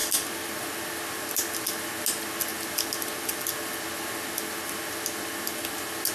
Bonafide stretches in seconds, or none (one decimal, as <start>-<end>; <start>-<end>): 0.0-6.1